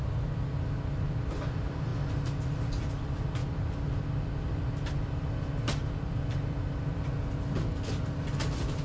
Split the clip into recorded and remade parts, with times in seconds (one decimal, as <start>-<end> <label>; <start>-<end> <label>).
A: 0.0-8.8 recorded